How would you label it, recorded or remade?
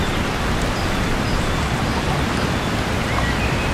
recorded